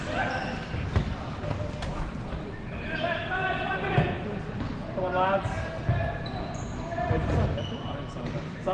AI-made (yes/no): no